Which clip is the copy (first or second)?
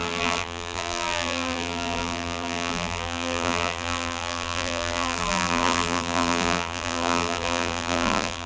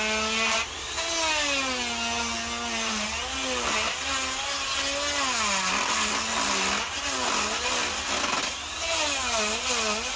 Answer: first